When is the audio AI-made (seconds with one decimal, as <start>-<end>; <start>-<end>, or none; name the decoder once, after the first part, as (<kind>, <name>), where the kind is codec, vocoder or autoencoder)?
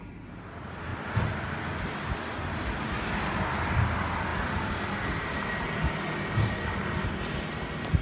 none